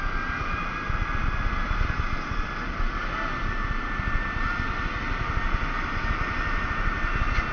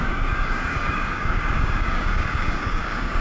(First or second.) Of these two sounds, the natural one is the first